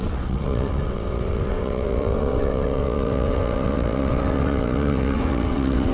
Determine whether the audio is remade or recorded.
remade